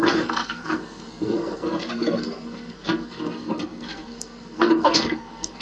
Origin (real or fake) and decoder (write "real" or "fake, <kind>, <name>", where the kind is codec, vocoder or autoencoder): fake, codec, SNAC